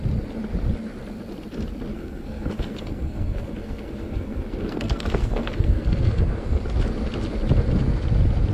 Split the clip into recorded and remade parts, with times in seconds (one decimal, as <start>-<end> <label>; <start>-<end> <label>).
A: 0.0-1.9 recorded; 1.9-6.6 remade; 6.6-8.5 recorded